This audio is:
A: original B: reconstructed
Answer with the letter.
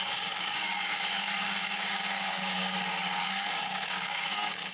B